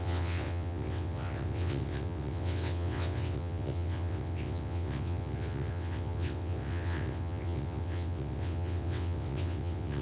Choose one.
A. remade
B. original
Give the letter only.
A